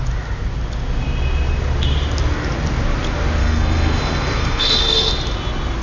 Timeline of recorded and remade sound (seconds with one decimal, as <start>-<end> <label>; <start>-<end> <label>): 0.0-3.4 recorded; 3.4-5.1 remade; 5.1-5.8 recorded

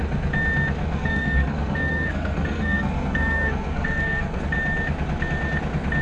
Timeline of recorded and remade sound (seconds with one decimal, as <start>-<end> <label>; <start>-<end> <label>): 0.0-0.8 recorded; 0.8-4.4 remade; 4.4-6.0 recorded

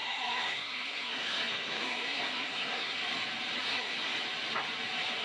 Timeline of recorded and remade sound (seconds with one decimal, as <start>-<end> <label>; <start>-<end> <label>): 0.0-3.0 remade; 3.0-3.6 recorded; 3.6-4.1 remade; 4.1-5.2 recorded

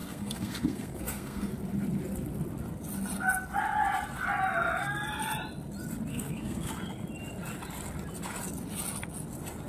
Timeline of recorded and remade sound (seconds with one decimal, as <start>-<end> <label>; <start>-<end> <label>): 0.0-1.5 remade; 1.5-6.1 recorded; 6.1-6.7 remade; 6.7-9.7 recorded

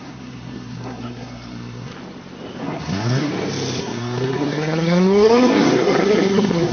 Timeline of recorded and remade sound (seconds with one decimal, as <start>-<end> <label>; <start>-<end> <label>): 0.0-1.9 remade; 1.9-2.6 recorded; 2.6-3.3 remade; 3.3-3.8 recorded; 3.8-6.7 remade

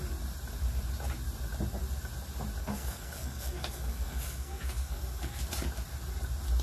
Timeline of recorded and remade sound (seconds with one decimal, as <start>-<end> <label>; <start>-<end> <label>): 0.0-2.6 recorded; 2.6-5.4 remade; 5.4-6.6 recorded

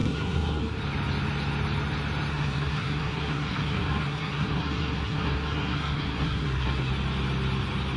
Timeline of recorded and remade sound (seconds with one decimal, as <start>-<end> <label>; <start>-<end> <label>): 0.0-0.6 remade; 0.6-2.3 recorded; 2.3-6.9 remade; 6.9-8.0 recorded